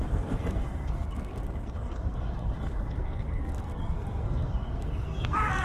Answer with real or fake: fake